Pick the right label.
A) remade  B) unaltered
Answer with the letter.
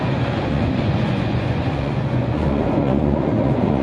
A